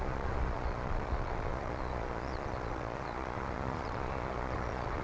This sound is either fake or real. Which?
fake